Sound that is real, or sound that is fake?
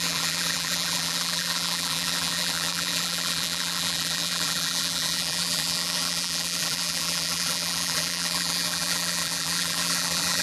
fake